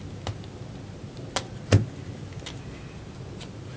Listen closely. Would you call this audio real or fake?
real